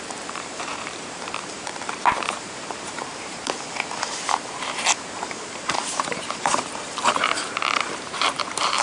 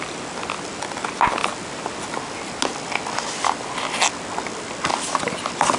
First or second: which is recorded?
second